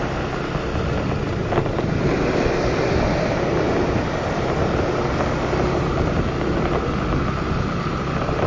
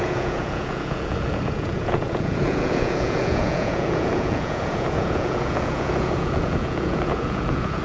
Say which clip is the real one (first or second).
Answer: first